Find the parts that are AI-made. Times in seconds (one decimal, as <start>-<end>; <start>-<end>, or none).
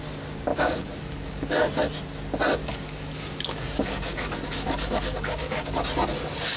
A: 0.5-1.7; 2.6-5.8